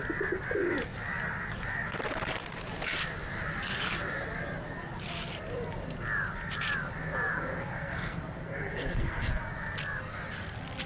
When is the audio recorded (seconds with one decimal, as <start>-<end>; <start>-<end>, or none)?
0.0-7.3; 9.3-10.9